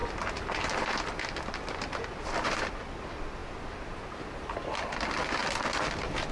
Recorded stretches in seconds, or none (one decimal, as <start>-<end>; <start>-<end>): 0.0-6.3

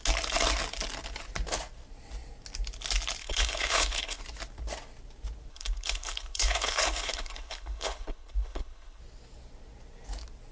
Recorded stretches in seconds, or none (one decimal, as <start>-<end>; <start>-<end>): 0.0-3.2; 4.2-5.5; 9.0-10.5

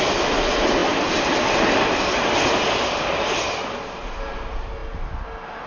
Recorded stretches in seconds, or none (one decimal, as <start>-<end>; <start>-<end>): 0.0-5.7